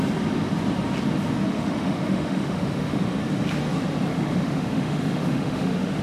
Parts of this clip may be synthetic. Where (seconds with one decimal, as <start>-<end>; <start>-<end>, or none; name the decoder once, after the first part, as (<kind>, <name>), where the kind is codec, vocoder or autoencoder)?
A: 1.5-3.0 (autoencoder, DAC-VAE); 4.1-6.0